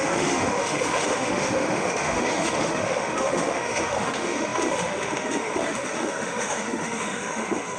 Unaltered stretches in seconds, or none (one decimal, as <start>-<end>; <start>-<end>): none